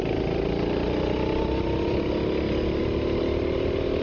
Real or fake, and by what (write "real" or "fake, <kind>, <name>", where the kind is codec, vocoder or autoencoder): real